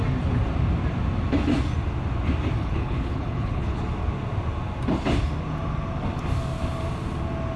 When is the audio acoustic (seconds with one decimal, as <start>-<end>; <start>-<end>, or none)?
0.0-2.6; 3.8-7.6